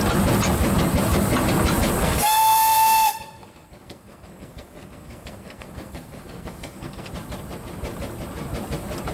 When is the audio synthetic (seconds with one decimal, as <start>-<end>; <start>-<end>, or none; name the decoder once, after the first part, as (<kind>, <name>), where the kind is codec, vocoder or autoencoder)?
2.0-7.1 (codec, SNAC)